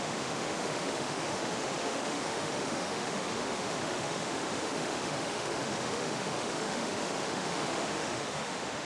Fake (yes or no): yes